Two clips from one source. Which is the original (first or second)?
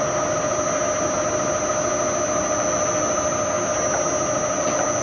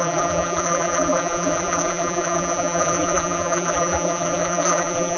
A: first